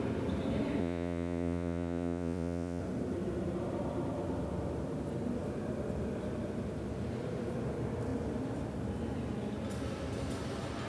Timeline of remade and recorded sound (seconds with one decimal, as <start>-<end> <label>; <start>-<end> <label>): 0.0-0.8 recorded; 0.8-2.8 remade; 2.8-10.9 recorded